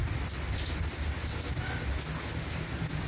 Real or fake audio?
real